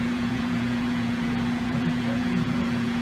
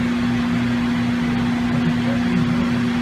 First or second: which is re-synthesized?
first